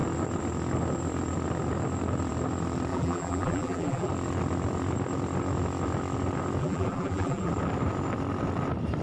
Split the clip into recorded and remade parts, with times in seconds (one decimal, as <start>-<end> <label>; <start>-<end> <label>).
0.0-2.9 recorded; 2.9-4.1 remade; 4.1-6.6 recorded; 6.6-7.5 remade; 7.5-9.0 recorded